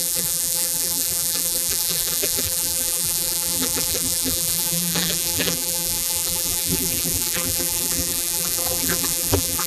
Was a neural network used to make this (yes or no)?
yes